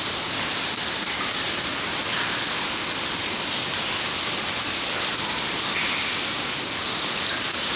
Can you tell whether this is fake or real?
real